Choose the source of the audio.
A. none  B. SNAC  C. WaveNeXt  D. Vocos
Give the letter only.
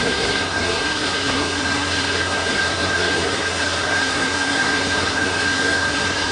B